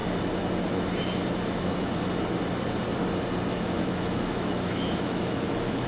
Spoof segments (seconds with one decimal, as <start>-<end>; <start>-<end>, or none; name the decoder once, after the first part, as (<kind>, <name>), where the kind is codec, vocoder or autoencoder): 3.5-5.9 (autoencoder, DAC-VAE)